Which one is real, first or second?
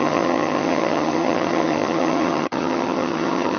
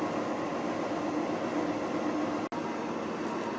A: second